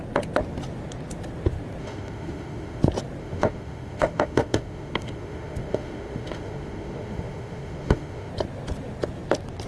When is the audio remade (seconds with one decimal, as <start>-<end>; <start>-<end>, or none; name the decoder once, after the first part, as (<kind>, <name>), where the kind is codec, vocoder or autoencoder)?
1.8-2.8 (autoencoder, DAC-VAE); 3.2-8.3

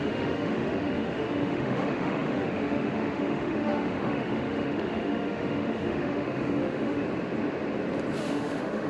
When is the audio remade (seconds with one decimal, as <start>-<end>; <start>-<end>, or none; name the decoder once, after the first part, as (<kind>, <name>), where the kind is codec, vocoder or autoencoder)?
0.0-7.0 (autoencoder, DAC-VAE); 8.2-8.9

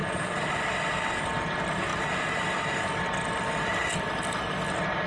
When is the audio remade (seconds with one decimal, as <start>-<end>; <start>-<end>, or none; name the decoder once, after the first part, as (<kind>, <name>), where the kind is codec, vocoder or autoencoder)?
none

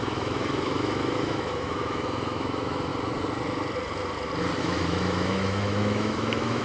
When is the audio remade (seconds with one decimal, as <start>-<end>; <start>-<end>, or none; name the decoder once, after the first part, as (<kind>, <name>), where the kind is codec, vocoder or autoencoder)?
0.0-2.9 (autoencoder, DAC-VAE); 4.6-6.6